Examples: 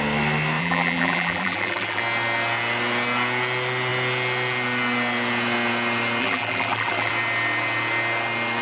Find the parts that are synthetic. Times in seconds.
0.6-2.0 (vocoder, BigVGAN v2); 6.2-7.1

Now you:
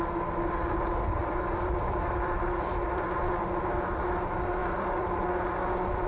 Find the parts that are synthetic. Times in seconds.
1.2-3.6 (vocoder, BigVGAN v2); 4.6-5.2